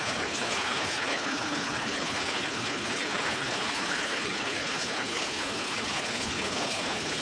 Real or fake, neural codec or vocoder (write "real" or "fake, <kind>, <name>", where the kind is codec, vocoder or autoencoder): fake, codec, HILCodec